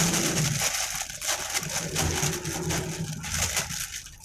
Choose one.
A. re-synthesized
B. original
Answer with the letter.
B